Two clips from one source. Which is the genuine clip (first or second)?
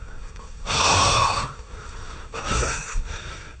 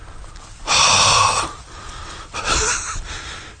second